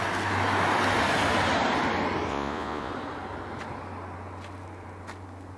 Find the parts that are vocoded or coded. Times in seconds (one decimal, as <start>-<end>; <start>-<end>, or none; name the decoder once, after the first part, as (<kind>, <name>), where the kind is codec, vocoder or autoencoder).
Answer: 2.3-2.9 (vocoder, Vocos)